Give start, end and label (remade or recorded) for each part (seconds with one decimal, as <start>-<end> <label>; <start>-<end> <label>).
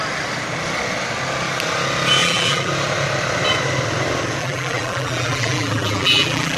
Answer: 0.0-2.2 recorded; 2.2-2.7 remade; 2.7-4.4 recorded; 4.4-6.6 remade